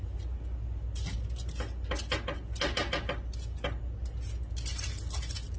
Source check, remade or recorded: recorded